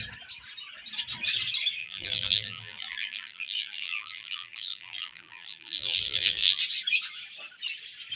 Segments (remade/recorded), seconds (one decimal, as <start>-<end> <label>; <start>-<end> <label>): 0.0-1.8 recorded; 1.8-6.6 remade; 6.6-8.2 recorded